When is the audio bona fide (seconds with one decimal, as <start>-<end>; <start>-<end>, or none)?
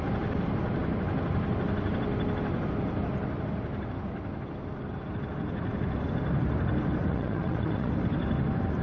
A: 0.0-7.0; 7.9-8.8